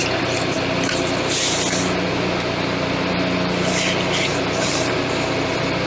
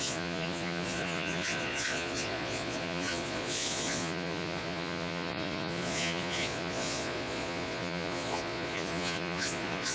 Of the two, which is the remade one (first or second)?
second